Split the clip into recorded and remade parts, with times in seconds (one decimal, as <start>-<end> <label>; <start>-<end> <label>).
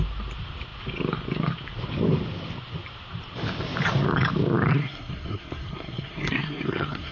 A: 0.0-4.7 recorded; 4.7-7.1 remade